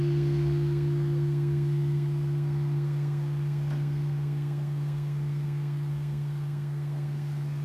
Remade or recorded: remade